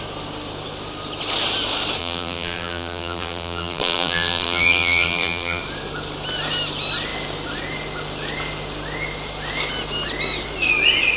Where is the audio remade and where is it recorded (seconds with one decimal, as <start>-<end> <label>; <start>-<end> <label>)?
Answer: 0.0-2.0 recorded; 2.0-5.6 remade; 5.6-11.2 recorded